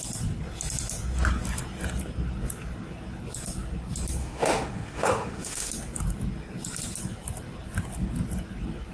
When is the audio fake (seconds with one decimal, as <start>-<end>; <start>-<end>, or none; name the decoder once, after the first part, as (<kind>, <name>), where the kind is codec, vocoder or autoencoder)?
4.2-5.7 (autoencoder, DAC-VAE)